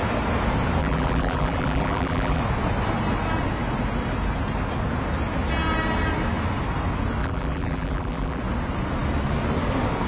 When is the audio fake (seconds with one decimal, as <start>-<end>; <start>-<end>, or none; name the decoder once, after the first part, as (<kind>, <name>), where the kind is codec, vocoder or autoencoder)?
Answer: 0.8-2.4 (vocoder, BigVGAN v2); 7.2-8.4